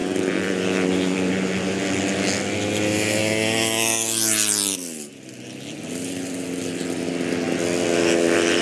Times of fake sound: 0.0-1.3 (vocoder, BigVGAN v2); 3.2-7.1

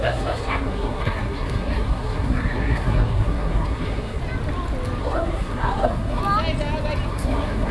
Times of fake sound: 0.0-4.2 (codec, SNAC); 5.0-6.2; 7.1-7.7

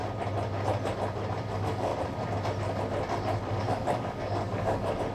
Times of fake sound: 1.5-1.9 (codec, DAC); 3.5-5.1